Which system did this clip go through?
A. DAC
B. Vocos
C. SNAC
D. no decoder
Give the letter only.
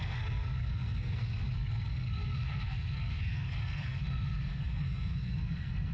C